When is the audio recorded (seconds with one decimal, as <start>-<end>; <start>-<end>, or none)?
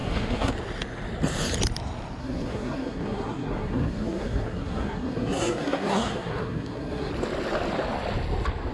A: 0.5-2.2; 7.1-8.7